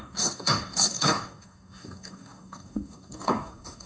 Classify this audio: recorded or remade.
remade